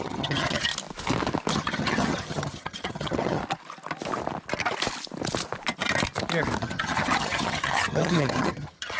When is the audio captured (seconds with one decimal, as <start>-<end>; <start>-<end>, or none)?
0.7-1.5; 3.4-6.6